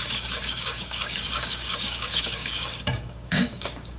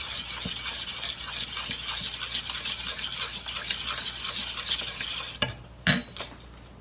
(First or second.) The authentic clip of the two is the second